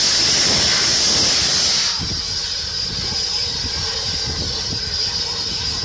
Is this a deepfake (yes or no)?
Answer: no